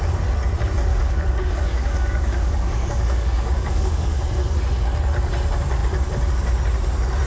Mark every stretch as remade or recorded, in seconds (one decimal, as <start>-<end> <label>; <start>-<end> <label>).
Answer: 0.0-0.9 recorded; 0.9-4.2 remade; 4.2-7.3 recorded